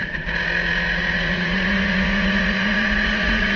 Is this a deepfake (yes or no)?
yes